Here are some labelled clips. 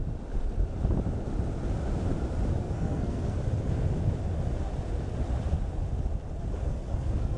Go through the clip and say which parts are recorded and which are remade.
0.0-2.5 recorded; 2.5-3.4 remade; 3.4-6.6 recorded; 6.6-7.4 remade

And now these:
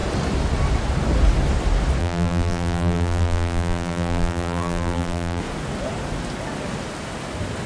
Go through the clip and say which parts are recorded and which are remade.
0.0-2.0 recorded; 2.0-5.4 remade; 5.4-7.7 recorded

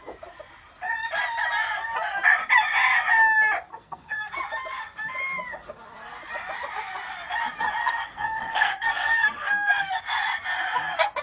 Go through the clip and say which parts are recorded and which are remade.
0.0-3.7 recorded; 3.7-4.3 remade; 4.3-7.8 recorded; 7.8-10.0 remade; 10.0-11.2 recorded

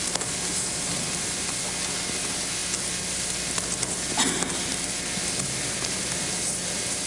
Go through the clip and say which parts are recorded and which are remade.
0.0-7.1 recorded

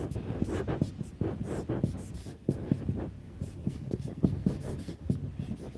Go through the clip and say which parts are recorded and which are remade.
0.0-2.2 recorded; 2.2-2.8 remade; 2.8-3.2 recorded; 3.2-5.1 remade; 5.1-5.8 recorded